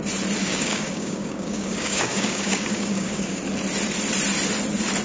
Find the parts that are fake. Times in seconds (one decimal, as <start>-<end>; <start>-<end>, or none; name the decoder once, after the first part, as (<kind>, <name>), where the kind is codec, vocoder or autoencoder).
0.4-3.4 (codec, DAC)